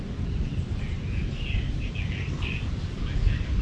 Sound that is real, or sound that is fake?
real